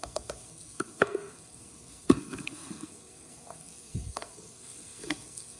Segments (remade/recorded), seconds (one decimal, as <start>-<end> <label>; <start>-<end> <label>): 0.0-5.6 remade

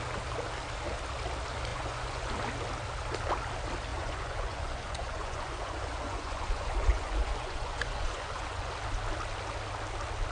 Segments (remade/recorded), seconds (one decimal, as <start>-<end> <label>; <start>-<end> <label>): 0.0-1.7 recorded; 1.7-2.3 remade; 2.3-3.9 recorded; 3.9-8.7 remade; 8.7-10.3 recorded

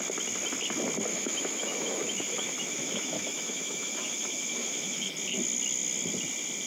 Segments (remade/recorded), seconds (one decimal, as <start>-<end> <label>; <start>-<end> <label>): 0.0-1.1 recorded; 1.1-5.1 remade; 5.1-6.7 recorded

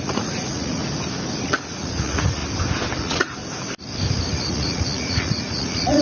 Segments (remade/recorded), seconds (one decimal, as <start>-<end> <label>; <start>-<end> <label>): 0.0-0.8 remade; 0.8-1.4 recorded; 1.4-2.4 remade; 2.4-3.0 recorded; 3.0-3.4 remade; 3.4-4.3 recorded; 4.3-6.0 remade

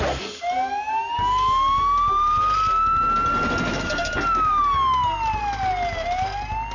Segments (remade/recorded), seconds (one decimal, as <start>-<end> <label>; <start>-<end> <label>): 0.0-3.7 recorded; 3.7-4.6 remade; 4.6-6.7 recorded

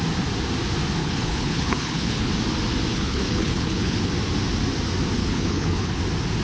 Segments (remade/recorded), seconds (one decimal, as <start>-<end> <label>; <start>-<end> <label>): 0.0-1.0 recorded; 1.0-2.3 remade; 2.3-2.9 recorded; 2.9-4.1 remade; 4.1-5.2 recorded; 5.2-6.0 remade; 6.0-6.4 recorded